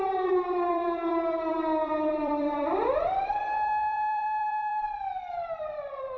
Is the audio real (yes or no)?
no